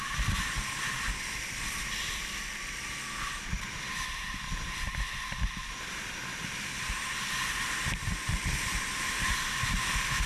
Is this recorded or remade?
recorded